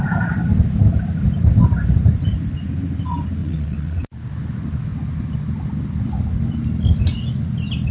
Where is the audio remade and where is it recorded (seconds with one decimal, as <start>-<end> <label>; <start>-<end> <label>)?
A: 0.0-3.4 recorded; 3.4-4.1 remade; 4.1-7.9 recorded